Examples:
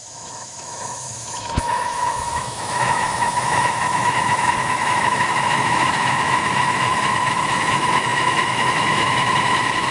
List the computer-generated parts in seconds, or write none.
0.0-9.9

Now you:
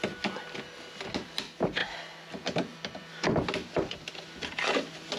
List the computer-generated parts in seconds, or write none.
1.8-5.2

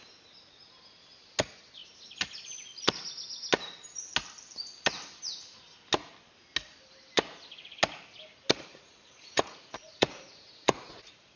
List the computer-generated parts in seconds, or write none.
8.7-11.4

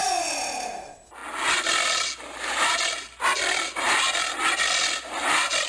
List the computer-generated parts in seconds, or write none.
none

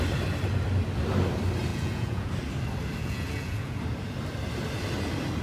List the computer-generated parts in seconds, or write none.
1.7-2.3; 3.0-3.8

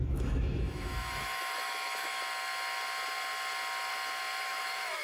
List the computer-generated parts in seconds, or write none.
0.0-2.2; 4.4-5.0

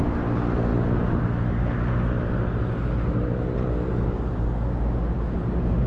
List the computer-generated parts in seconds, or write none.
none